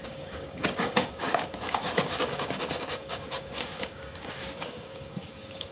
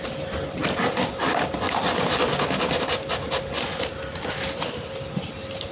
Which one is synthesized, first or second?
first